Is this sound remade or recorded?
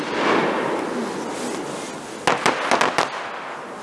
recorded